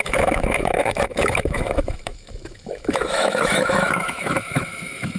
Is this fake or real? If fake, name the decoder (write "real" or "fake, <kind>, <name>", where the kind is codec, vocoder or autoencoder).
fake, autoencoder, DAC-VAE